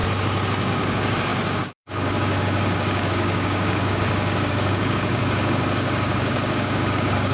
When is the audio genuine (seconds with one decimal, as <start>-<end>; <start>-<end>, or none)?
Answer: 0.0-0.7